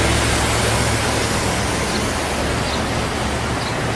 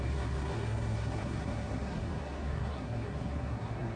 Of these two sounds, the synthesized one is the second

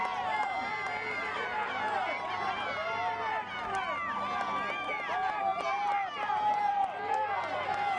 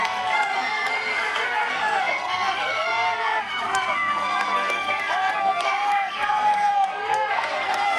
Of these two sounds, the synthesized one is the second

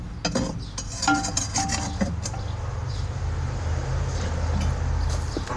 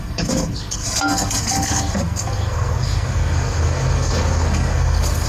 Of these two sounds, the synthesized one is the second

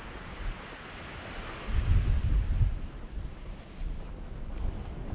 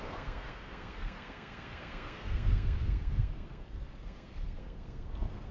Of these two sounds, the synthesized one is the second